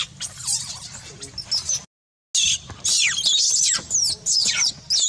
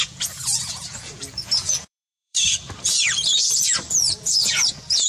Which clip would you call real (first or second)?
first